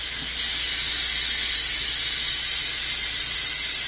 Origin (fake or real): real